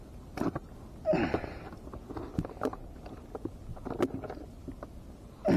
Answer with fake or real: real